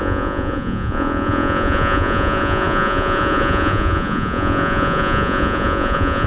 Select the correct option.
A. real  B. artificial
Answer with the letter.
B